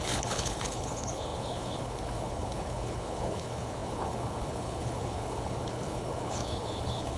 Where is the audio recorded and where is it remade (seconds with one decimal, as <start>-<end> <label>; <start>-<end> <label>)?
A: 0.0-7.2 remade